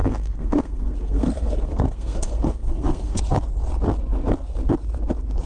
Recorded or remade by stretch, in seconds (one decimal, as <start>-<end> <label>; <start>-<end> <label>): 0.0-3.2 remade; 3.2-5.5 recorded